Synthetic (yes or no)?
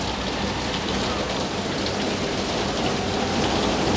no